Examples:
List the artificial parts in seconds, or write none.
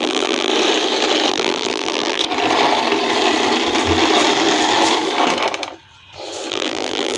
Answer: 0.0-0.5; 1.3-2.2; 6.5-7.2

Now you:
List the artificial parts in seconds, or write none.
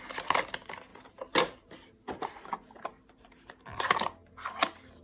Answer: 0.9-3.9